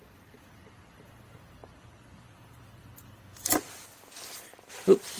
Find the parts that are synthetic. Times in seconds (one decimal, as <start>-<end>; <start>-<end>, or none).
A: none